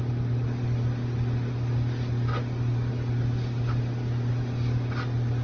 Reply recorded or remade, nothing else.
recorded